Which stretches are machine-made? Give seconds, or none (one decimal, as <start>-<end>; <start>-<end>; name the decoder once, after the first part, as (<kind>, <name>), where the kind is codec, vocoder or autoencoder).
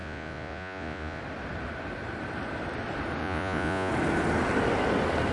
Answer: 0.0-1.2 (vocoder, Vocos); 3.2-3.9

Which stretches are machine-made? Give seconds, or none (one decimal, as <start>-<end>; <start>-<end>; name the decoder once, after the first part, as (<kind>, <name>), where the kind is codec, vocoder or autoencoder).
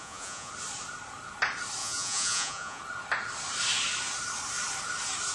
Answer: 0.0-0.5 (vocoder, Vocos); 1.8-2.8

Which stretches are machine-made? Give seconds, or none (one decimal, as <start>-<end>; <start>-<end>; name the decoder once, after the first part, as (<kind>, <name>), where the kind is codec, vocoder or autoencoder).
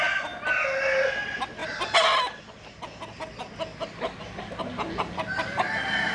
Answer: none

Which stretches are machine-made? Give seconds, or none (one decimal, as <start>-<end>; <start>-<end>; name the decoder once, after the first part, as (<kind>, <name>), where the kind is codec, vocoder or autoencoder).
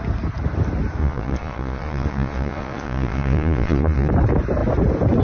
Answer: 1.0-4.1 (vocoder, Vocos)